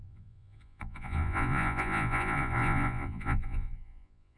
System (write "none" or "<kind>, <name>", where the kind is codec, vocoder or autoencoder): vocoder, Vocos